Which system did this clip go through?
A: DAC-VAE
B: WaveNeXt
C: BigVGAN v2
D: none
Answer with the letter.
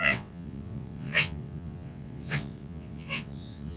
B